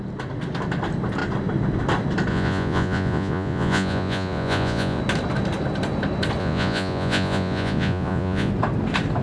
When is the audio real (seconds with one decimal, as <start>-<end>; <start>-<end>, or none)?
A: 0.0-2.3; 5.0-6.4; 8.5-9.2

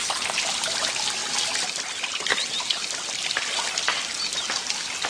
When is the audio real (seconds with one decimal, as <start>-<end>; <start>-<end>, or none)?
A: 0.0-5.1

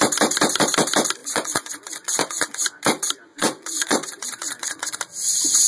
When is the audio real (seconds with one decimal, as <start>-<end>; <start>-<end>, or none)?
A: 0.0-1.2; 2.6-3.3; 5.0-5.7

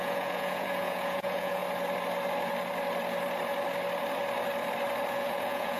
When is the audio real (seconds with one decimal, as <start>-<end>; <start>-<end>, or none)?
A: 1.6-5.1

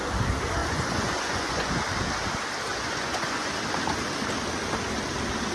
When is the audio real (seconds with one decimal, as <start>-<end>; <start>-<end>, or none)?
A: 0.0-0.6; 1.8-2.7; 3.5-5.5

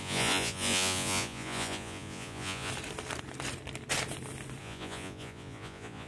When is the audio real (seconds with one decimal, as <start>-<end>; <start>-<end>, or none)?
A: 2.7-4.6